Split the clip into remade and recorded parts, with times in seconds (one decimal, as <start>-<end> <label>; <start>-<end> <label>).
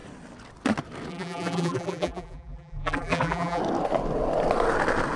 0.0-1.1 recorded; 1.1-3.6 remade; 3.6-5.2 recorded